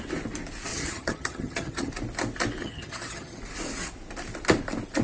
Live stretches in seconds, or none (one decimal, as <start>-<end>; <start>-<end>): 0.0-0.7; 1.9-2.6; 3.4-5.0